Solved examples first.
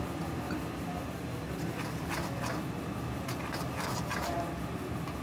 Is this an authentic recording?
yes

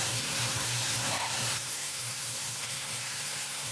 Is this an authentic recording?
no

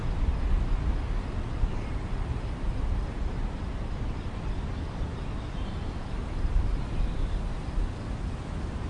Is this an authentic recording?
yes